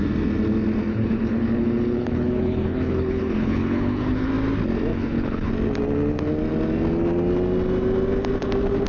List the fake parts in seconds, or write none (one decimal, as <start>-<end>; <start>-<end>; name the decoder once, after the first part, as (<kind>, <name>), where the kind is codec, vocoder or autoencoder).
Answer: 0.9-4.3 (codec, HILCodec); 4.9-5.5